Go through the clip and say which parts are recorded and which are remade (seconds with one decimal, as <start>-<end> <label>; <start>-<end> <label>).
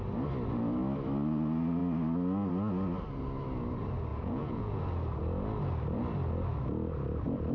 0.0-4.1 recorded; 4.1-4.8 remade; 4.8-7.5 recorded